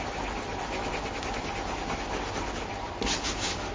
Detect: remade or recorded recorded